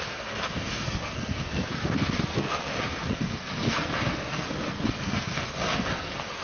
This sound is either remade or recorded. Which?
remade